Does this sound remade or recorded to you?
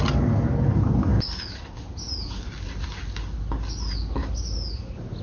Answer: recorded